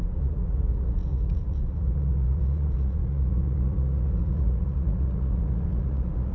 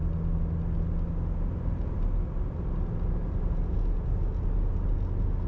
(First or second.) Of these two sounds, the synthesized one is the first